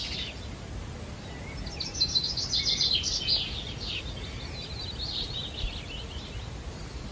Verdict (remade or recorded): recorded